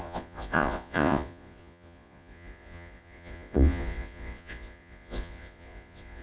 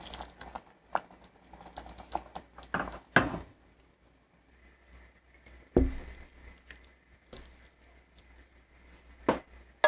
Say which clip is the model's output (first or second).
first